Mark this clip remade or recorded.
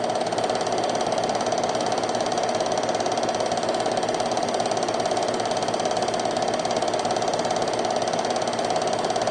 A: recorded